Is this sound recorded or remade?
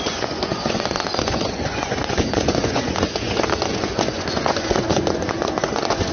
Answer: remade